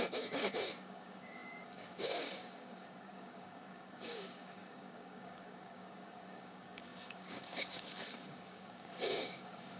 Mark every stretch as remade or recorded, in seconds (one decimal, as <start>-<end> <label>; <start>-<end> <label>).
0.0-9.8 remade